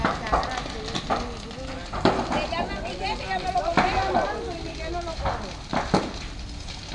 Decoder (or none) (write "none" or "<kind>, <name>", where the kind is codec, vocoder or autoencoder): none